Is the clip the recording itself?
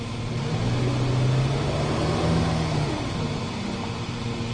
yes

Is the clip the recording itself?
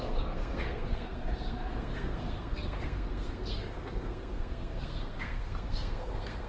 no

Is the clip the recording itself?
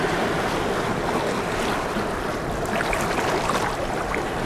yes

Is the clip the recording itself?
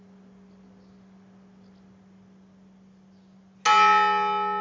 yes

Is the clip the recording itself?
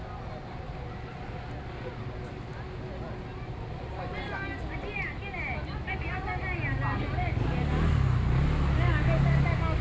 yes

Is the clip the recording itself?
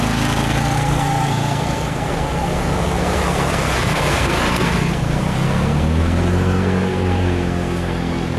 no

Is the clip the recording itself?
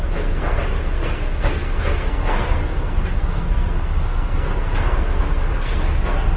no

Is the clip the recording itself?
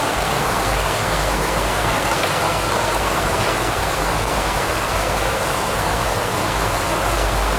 no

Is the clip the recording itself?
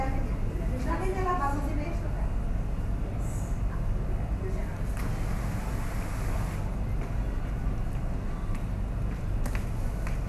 yes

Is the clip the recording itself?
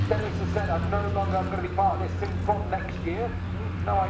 yes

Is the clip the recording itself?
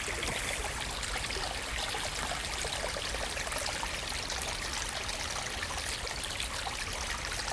yes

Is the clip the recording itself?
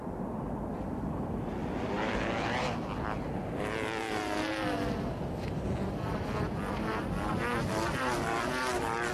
yes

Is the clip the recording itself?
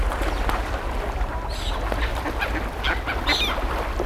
yes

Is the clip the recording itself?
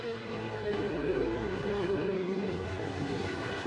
no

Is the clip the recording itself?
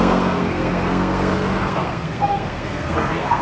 no